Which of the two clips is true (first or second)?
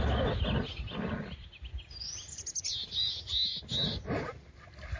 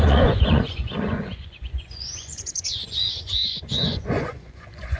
first